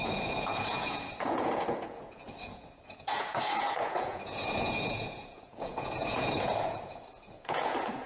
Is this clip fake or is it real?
fake